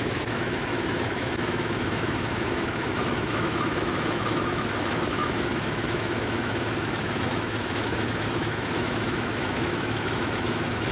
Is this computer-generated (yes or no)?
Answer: yes